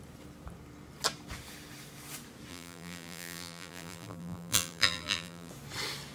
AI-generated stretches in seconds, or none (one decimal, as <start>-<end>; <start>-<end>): 2.5-5.5

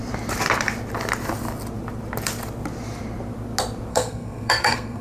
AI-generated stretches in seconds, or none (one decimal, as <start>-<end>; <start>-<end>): 3.9-5.0

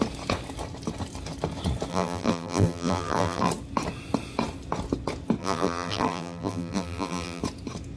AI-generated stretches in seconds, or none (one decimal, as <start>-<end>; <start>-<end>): 1.9-3.5; 5.4-7.4

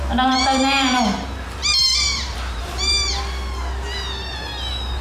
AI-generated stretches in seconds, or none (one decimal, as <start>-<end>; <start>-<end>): 0.0-3.2

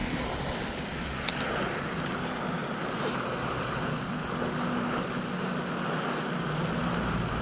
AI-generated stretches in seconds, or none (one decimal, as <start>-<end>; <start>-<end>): none

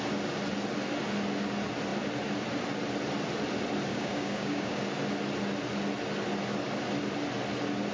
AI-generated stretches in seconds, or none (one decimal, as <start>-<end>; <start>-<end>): 3.9-4.8

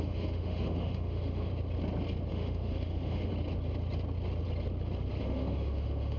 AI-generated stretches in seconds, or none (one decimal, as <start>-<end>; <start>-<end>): 0.0-1.5; 2.3-3.3; 5.2-6.2